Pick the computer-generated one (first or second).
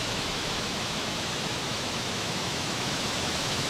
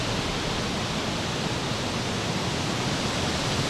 first